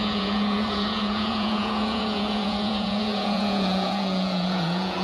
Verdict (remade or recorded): remade